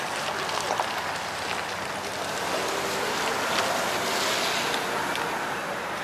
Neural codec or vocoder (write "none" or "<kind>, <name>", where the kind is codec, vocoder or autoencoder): none